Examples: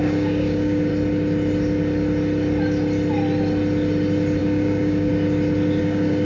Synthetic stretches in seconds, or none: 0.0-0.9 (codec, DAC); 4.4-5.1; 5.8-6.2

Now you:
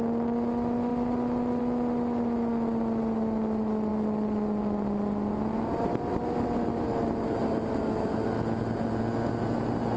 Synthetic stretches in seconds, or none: none

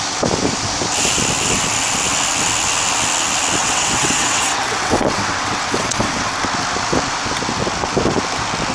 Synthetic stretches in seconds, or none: 3.6-6.3 (vocoder, WaveNeXt)

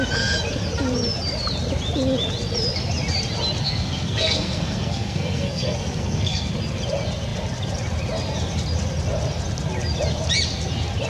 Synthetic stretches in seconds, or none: 3.6-6.5 (codec, SNAC)

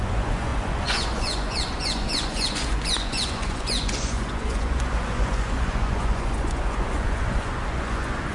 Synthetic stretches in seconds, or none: 0.0-8.3 (vocoder, Vocos)

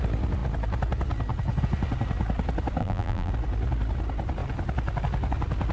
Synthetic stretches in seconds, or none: 2.8-3.3 (vocoder, BigVGAN v2)

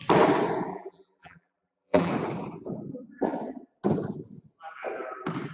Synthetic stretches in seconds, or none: 0.7-2.1 (vocoder, BigVGAN v2)

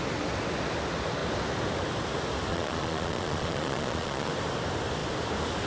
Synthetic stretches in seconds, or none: 2.5-4.3 (vocoder, Vocos)